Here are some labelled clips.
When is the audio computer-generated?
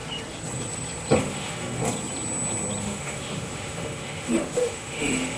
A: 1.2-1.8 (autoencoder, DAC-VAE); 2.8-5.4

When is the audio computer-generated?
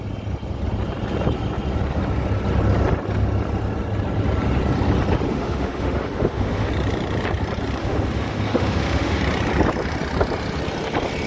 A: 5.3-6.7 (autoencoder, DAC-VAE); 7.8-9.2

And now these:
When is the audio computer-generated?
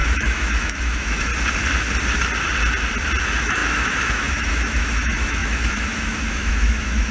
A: 0.0-1.3 (autoencoder, DAC-VAE); 3.2-7.1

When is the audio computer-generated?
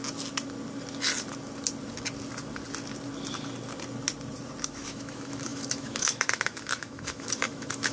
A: 4.6-7.9 (autoencoder, DAC-VAE)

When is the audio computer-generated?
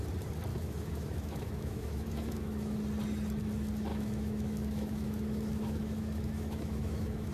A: 0.5-2.8 (autoencoder, DAC-VAE); 3.9-7.3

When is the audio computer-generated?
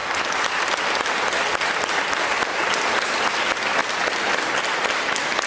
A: none